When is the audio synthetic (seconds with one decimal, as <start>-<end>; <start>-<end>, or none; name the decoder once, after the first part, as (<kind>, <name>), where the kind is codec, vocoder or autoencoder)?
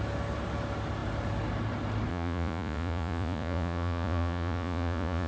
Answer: 2.1-5.3 (vocoder, Vocos)